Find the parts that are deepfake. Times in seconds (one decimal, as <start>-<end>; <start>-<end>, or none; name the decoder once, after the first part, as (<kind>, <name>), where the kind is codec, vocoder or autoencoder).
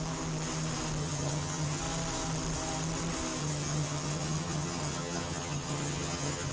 1.0-1.8 (vocoder, HiFi-GAN); 3.4-6.5